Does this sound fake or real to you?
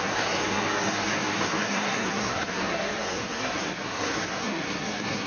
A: fake